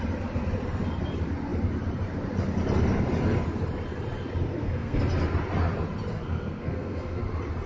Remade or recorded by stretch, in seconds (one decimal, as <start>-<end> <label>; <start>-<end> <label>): 0.0-4.5 recorded; 4.5-5.0 remade; 5.0-6.1 recorded; 6.1-7.2 remade; 7.2-7.7 recorded